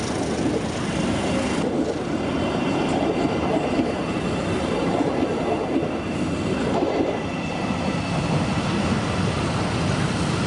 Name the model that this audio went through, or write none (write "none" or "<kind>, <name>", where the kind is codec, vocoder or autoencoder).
none